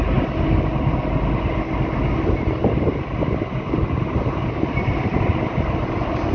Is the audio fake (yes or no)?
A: no